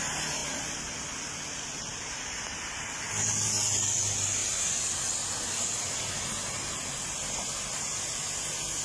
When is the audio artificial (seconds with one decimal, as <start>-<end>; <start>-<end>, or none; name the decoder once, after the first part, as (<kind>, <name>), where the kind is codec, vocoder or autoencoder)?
none